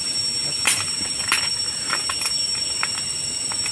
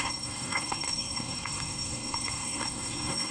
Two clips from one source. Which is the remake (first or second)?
second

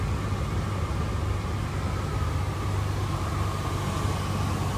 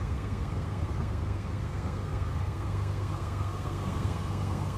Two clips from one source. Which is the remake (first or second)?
second